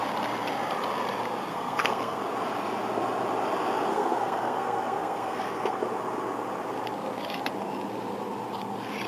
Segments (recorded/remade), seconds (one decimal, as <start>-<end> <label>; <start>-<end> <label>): 0.0-1.5 recorded; 1.5-2.2 remade; 2.2-3.9 recorded; 3.9-5.8 remade; 5.8-9.1 recorded

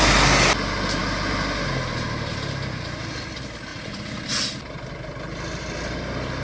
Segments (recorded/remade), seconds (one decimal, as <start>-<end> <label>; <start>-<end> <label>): 0.0-3.7 recorded; 3.7-4.2 remade; 4.2-6.4 recorded

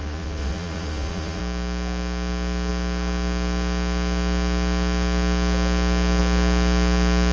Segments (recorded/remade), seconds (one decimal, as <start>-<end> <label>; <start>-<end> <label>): 0.0-1.4 remade; 1.4-7.3 recorded

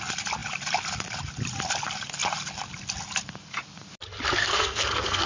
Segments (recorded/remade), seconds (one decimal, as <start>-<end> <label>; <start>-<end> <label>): 0.0-4.4 recorded; 4.4-5.3 remade

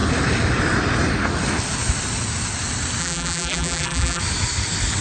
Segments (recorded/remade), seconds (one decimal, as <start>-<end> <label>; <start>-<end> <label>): 0.0-3.0 recorded; 3.0-4.2 remade; 4.2-5.0 recorded

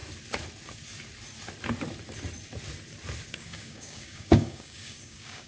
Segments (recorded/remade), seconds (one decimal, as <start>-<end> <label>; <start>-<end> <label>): 0.0-3.3 recorded; 3.3-5.5 remade

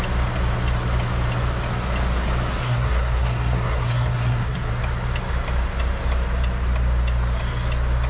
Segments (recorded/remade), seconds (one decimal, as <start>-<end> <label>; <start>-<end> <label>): 0.0-2.5 recorded; 2.5-4.7 remade; 4.7-8.1 recorded

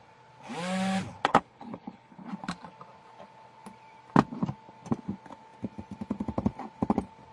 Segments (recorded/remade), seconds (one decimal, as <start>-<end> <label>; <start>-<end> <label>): 0.0-1.3 recorded; 1.3-2.3 remade; 2.3-7.3 recorded